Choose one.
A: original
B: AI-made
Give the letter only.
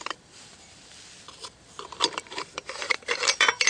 B